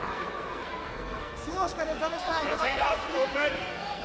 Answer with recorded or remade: remade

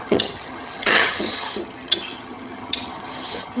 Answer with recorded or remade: remade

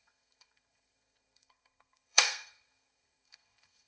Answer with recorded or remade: remade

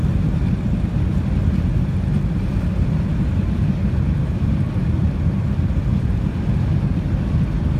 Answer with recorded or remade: recorded